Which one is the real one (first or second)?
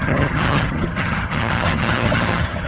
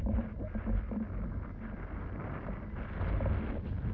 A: second